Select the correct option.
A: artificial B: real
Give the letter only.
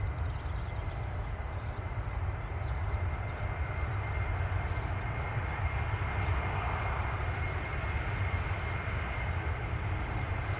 B